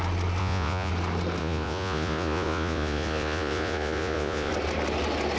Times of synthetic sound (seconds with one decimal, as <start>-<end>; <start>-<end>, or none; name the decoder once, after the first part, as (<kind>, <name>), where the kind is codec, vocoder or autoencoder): 0.4-0.9 (vocoder, Vocos); 1.4-4.5